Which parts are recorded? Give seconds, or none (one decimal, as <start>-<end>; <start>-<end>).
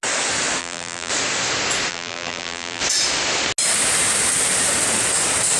0.0-0.6; 1.1-1.9; 2.8-5.6